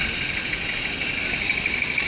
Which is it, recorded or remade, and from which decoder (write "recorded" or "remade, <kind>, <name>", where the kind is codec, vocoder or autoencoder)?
recorded